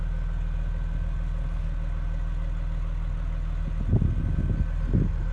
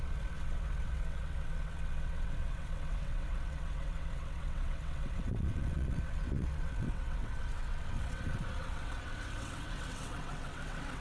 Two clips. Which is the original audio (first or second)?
first